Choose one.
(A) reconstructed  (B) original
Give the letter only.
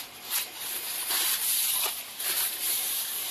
A